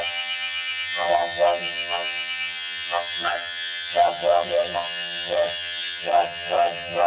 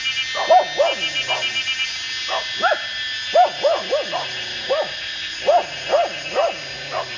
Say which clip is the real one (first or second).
second